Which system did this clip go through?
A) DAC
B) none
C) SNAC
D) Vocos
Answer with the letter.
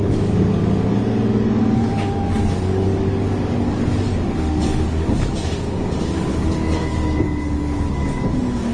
A